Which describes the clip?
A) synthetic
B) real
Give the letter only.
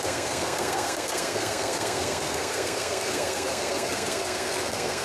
A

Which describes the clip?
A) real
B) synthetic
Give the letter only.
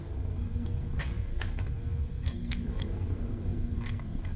B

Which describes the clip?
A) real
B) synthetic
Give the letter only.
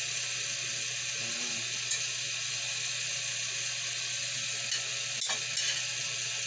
A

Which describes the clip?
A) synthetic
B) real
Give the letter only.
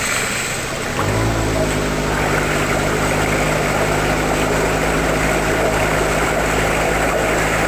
B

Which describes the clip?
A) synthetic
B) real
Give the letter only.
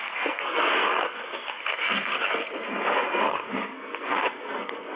A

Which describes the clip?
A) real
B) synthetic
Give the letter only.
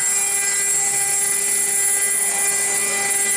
A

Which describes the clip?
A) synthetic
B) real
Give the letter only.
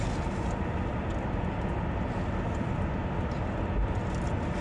B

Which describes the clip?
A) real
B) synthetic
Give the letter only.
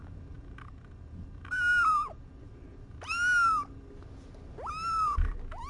A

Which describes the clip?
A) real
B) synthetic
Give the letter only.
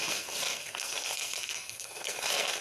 B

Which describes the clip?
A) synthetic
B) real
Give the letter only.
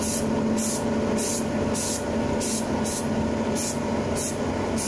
B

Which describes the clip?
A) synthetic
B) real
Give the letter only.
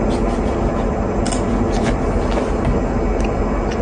B